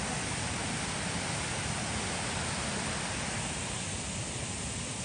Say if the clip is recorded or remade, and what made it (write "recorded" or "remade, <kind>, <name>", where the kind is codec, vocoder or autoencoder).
recorded